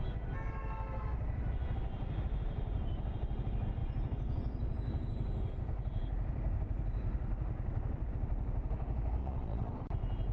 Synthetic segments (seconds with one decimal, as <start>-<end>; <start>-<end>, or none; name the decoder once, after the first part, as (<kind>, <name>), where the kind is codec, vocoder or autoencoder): 9.2-9.7 (vocoder, Vocos)